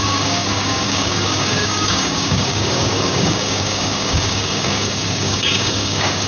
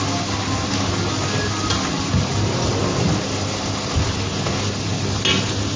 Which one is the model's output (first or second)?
first